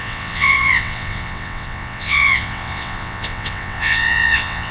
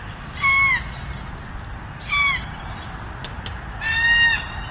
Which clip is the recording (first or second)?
second